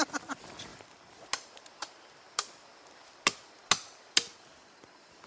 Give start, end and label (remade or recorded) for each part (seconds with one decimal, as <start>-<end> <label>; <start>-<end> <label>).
0.0-5.3 recorded